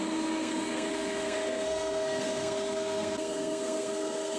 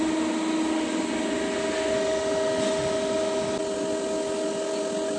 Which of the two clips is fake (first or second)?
first